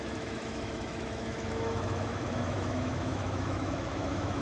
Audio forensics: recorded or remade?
remade